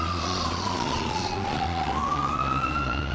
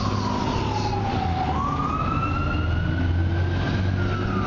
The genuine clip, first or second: second